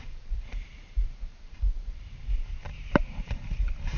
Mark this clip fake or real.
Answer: fake